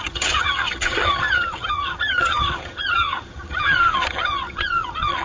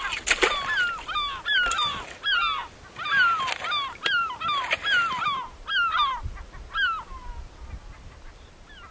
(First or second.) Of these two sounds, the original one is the second